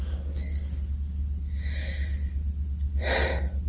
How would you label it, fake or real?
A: real